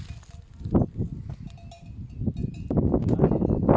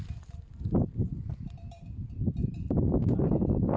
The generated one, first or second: second